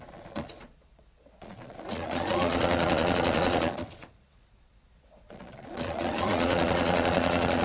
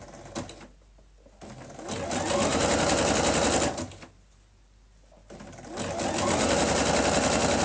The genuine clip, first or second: second